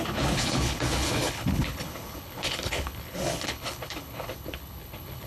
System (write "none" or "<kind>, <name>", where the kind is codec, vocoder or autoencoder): codec, HILCodec